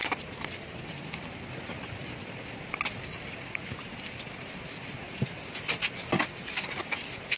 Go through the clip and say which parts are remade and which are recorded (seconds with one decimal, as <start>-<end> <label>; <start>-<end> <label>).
0.0-7.4 recorded